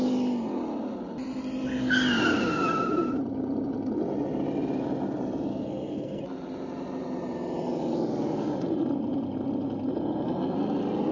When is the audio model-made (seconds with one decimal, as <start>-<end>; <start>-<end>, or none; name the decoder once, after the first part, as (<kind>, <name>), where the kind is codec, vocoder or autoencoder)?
5.5-6.2 (codec, SNAC)